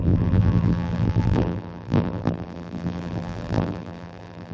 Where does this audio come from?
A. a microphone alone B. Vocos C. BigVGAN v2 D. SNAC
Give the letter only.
C